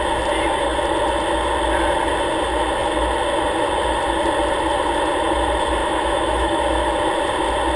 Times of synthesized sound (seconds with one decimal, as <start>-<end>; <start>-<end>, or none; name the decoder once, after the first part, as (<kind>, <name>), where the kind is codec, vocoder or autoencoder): 5.8-6.6 (autoencoder, DAC-VAE)